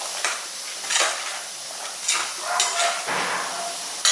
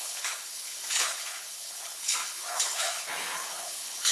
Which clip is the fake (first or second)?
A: second